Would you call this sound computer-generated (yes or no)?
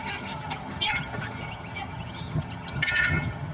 yes